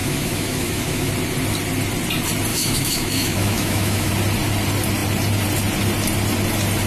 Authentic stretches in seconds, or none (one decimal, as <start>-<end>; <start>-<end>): 1.1-2.5; 4.1-6.9